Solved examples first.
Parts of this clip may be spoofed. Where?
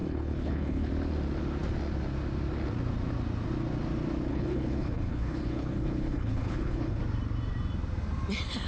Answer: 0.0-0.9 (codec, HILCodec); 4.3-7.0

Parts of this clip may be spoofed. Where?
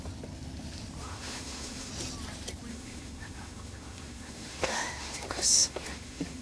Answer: 1.0-1.9 (autoencoder, DAC-VAE); 2.7-6.4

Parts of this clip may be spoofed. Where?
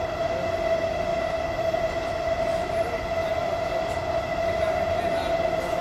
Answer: none